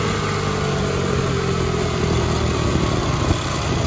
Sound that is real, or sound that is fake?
real